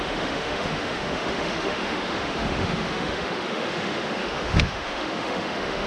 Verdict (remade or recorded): remade